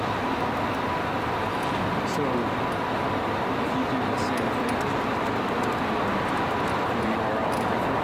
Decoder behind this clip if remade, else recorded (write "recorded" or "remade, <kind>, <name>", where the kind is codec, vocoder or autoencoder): recorded